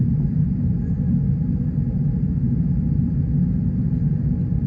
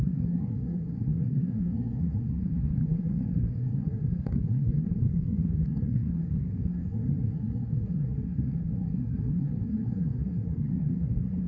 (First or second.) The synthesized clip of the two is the second